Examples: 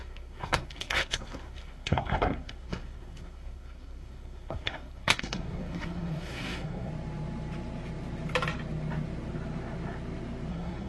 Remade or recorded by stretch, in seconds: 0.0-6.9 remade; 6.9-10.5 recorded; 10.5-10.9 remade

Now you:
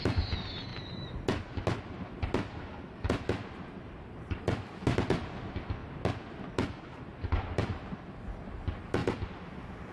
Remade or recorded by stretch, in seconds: 0.0-9.9 recorded

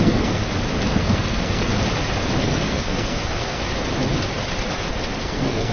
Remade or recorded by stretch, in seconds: 0.0-0.4 remade; 0.4-0.9 recorded; 0.9-1.7 remade; 1.7-2.4 recorded; 2.4-3.6 remade; 3.6-5.2 recorded; 5.2-5.7 remade

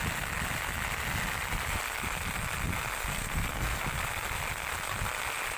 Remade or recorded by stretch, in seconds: 0.0-3.1 recorded; 3.1-3.8 remade; 3.8-5.6 recorded

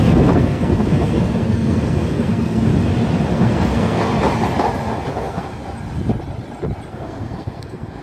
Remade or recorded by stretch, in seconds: 0.0-2.7 remade; 2.7-3.3 recorded; 3.3-4.1 remade; 4.1-5.1 recorded; 5.1-5.6 remade; 5.6-6.9 recorded; 6.9-8.0 remade